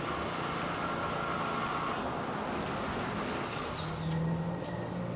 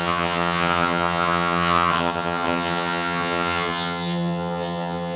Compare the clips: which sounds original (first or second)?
first